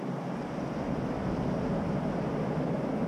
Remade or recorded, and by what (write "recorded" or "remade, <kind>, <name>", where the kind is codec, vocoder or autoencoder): remade, vocoder, BigVGAN v2